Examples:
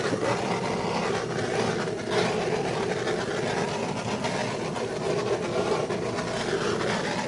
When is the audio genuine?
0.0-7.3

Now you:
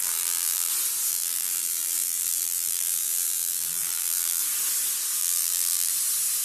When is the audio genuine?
0.7-1.1; 4.4-5.2; 5.9-6.4

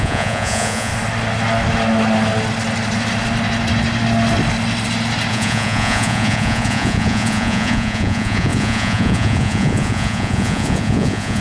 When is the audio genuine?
0.9-5.3